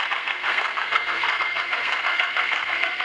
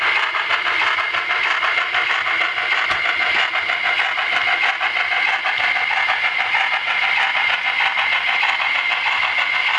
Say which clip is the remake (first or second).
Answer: first